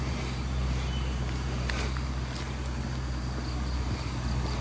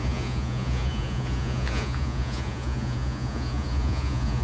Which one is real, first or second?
first